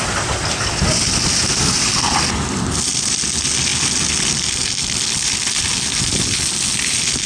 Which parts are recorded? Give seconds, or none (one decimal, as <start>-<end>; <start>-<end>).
0.0-7.3